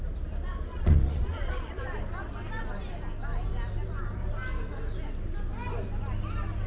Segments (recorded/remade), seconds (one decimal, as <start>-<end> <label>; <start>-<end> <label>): 0.0-0.7 recorded; 0.7-1.8 remade; 1.8-6.7 recorded